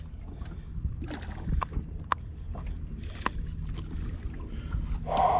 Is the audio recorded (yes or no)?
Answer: yes